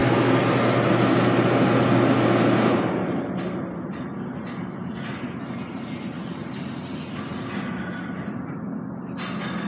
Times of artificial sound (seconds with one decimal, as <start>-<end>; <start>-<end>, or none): none